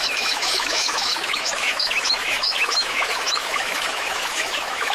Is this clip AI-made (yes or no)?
yes